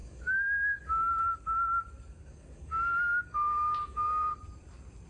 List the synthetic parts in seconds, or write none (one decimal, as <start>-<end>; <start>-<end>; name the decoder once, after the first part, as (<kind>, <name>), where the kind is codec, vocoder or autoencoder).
0.0-1.2 (codec, DAC); 2.2-4.4